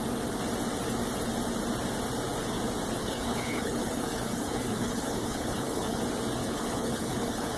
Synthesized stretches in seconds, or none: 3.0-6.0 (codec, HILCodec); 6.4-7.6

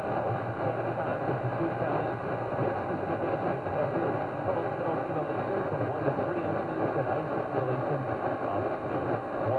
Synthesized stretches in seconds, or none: none

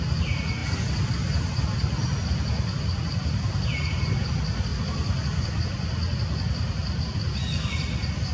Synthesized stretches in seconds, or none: none

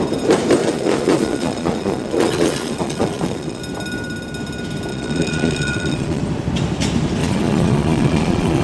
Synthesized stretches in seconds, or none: 0.6-3.6 (vocoder, Vocos); 4.9-6.2; 7.2-8.6

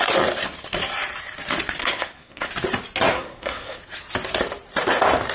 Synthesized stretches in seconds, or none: 1.8-2.5 (codec, SNAC); 3.1-3.8

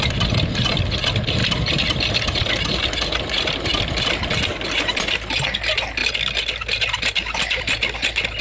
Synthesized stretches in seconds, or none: 1.4-3.8 (vocoder, BigVGAN v2); 6.0-7.6